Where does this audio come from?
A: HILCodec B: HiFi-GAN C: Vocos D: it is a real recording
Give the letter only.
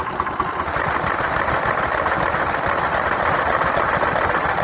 D